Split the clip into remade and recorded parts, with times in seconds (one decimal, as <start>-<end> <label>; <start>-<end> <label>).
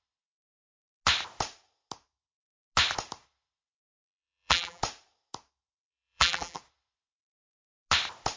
0.0-3.8 recorded; 3.8-4.8 remade; 4.8-5.9 recorded; 5.9-6.6 remade; 6.6-8.4 recorded